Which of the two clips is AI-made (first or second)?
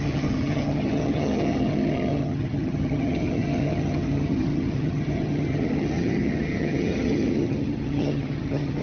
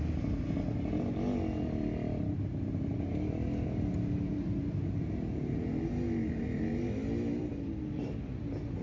first